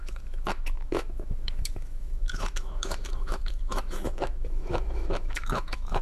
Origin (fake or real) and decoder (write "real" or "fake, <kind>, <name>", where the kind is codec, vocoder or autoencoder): fake, autoencoder, DAC-VAE